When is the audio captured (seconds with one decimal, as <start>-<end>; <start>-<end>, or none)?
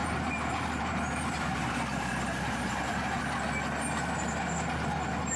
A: 3.2-5.4